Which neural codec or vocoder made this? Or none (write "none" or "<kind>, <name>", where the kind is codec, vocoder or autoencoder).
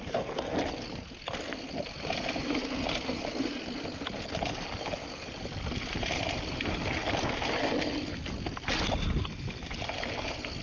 none